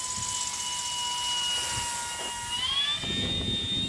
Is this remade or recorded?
recorded